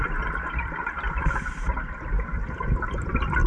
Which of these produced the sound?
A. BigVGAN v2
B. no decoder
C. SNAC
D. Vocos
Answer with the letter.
A